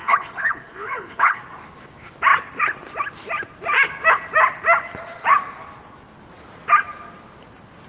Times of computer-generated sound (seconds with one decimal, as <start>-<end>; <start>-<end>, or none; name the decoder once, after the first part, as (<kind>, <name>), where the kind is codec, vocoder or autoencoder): 0.0-1.4 (codec, HILCodec)